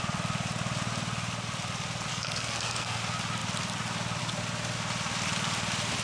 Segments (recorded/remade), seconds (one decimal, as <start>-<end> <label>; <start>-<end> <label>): 0.0-2.1 recorded; 2.1-3.0 remade; 3.0-6.0 recorded